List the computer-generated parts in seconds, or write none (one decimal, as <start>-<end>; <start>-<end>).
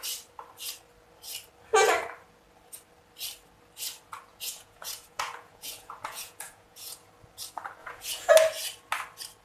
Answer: 4.3-7.1; 7.8-8.3